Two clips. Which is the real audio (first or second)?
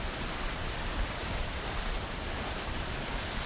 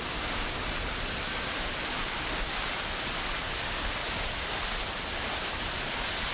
second